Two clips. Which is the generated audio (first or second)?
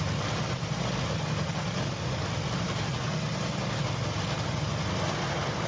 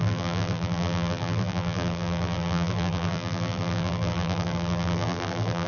second